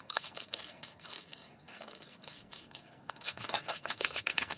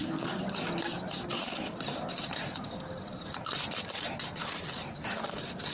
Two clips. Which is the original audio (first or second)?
second